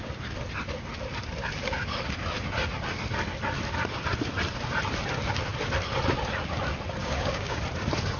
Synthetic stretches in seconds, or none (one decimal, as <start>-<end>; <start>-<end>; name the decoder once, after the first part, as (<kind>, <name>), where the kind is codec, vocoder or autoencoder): 7.0-7.6 (codec, DAC)